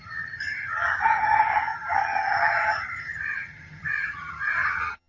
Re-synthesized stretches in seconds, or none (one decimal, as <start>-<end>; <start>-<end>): 0.0-5.1